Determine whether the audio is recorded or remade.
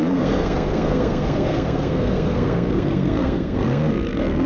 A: remade